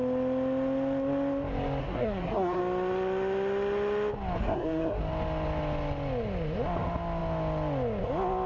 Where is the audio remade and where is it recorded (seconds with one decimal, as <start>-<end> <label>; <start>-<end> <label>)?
0.0-1.8 recorded; 1.8-2.6 remade; 2.6-4.4 recorded; 4.4-5.0 remade; 5.0-8.5 recorded

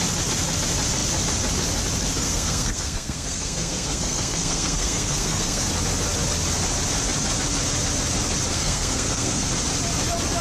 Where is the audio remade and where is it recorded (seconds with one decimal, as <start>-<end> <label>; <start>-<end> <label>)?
0.0-2.2 recorded; 2.2-5.7 remade; 5.7-8.5 recorded; 8.5-9.5 remade; 9.5-10.4 recorded

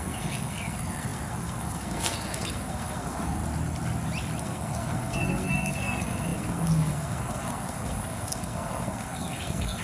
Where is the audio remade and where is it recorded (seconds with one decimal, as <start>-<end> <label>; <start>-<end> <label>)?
0.0-3.4 remade; 3.4-4.4 recorded; 4.4-9.8 remade

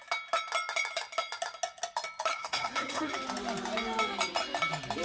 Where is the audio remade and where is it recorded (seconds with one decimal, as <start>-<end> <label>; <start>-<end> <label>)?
0.0-2.3 recorded; 2.3-3.1 remade; 3.1-5.0 recorded